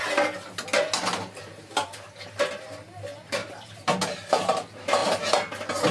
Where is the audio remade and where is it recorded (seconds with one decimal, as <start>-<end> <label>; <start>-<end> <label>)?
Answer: 0.0-5.9 recorded